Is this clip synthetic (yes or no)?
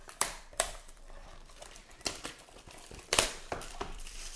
yes